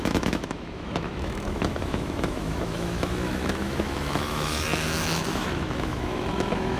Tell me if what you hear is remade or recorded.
remade